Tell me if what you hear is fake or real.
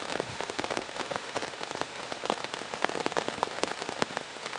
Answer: fake